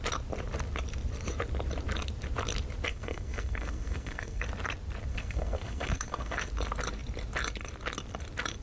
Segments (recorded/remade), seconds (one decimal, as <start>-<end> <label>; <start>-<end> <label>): 0.0-2.9 recorded; 2.9-4.4 remade; 4.4-5.1 recorded; 5.1-6.5 remade; 6.5-8.6 recorded